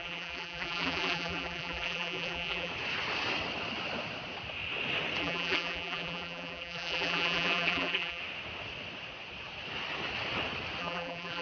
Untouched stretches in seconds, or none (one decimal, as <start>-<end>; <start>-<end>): 2.7-5.2; 8.2-10.8

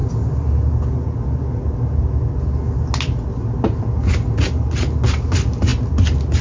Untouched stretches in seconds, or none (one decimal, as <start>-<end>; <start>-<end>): 0.0-6.4

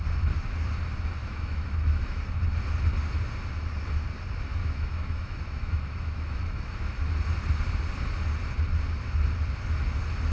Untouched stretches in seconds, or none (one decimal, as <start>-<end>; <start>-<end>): 0.0-1.2; 2.2-4.6; 6.9-10.3